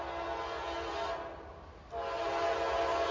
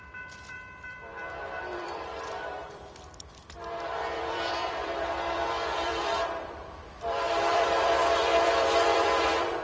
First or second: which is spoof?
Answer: second